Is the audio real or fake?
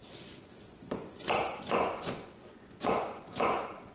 fake